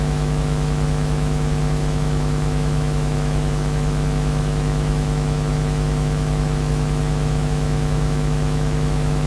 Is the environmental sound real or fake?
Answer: fake